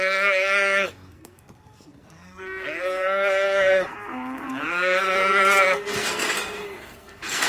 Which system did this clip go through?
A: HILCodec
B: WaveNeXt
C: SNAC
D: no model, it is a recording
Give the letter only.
C